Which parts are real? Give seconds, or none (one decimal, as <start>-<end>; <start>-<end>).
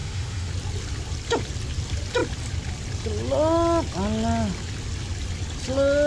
0.5-6.1